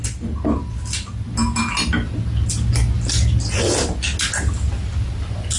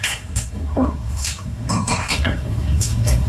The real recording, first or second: first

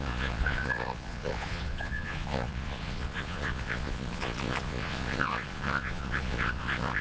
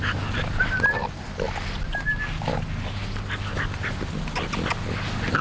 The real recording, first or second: second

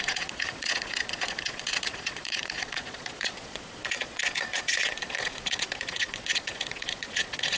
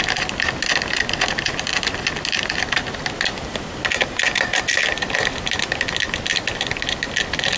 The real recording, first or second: second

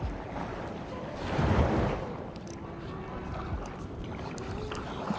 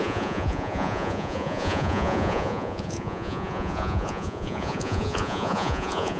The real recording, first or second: first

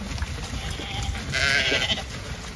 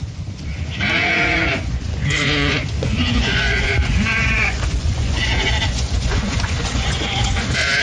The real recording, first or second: first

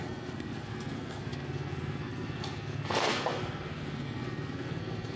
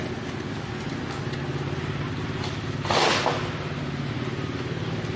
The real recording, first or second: second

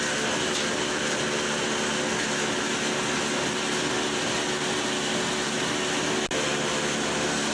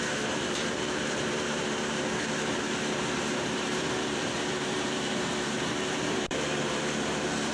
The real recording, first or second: first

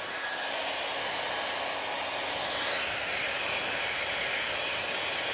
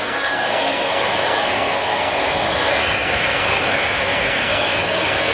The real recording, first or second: first